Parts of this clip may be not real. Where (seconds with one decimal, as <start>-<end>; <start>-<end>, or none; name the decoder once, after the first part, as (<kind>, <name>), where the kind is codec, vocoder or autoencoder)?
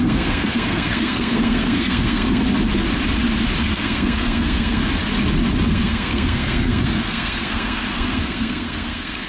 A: 0.0-2.4 (codec, SNAC); 3.6-4.8; 5.7-9.3